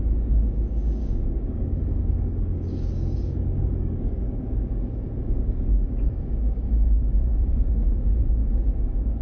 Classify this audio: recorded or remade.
remade